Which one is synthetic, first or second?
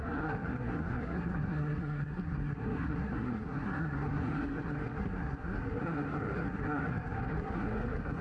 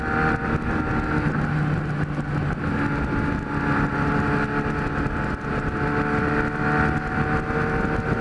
first